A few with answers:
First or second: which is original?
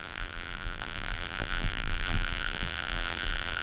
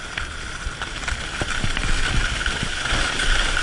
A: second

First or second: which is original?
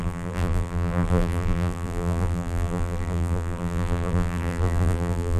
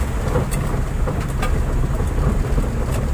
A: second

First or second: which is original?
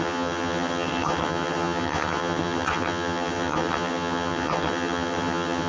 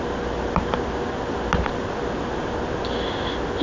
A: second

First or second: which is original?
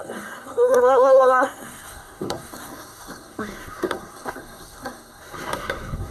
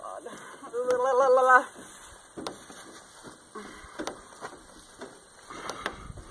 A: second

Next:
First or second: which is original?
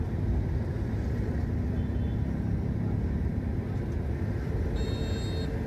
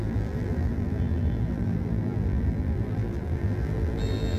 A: first